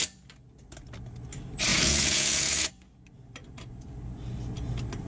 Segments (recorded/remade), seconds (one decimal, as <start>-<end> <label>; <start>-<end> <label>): 0.0-1.7 recorded; 1.7-2.7 remade; 2.7-5.1 recorded